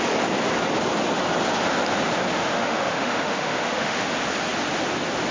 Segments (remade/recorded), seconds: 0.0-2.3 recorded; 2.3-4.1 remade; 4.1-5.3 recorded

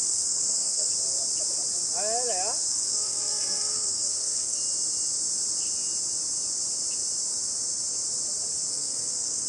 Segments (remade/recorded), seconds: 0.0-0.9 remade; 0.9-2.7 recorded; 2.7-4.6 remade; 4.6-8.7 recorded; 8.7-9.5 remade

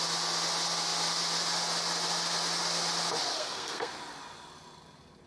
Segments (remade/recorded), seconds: 0.0-3.3 recorded; 3.3-3.9 remade; 3.9-5.3 recorded

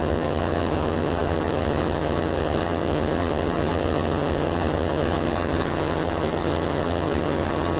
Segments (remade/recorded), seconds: 0.0-7.8 remade

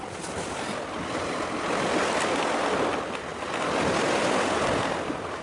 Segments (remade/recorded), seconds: 0.0-3.3 remade; 3.3-5.4 recorded